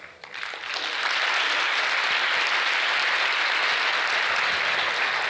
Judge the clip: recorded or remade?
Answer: recorded